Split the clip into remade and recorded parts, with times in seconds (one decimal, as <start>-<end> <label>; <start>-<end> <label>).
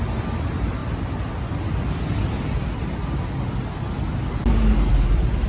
0.0-5.5 recorded